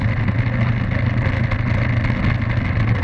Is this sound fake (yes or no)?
no